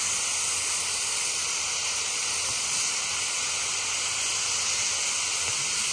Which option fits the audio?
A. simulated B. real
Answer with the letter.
B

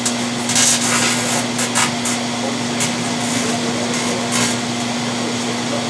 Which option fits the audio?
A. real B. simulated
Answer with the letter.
A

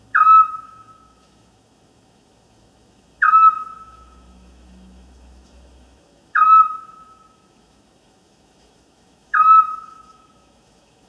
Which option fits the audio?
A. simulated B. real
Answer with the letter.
A